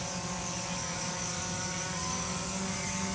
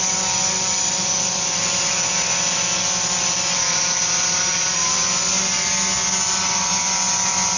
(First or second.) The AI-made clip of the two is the first